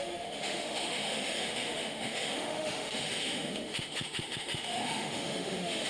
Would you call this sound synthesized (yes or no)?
yes